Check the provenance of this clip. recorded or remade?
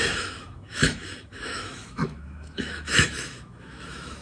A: remade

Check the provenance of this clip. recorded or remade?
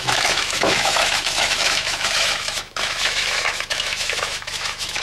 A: remade